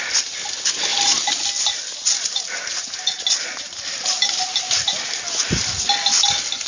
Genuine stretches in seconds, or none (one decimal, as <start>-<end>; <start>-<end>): 0.0-6.7